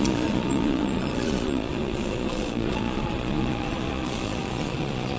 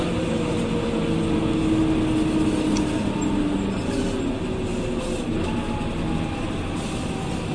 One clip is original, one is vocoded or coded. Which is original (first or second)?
second